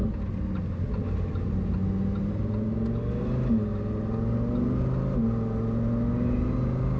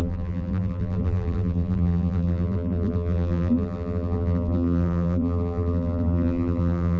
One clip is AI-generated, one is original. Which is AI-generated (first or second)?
second